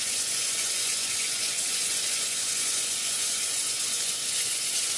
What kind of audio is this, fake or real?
fake